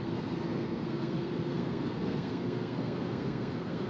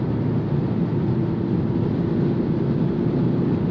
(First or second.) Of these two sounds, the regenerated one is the first